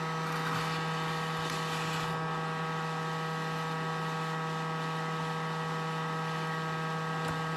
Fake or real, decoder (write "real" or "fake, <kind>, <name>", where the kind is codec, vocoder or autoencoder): real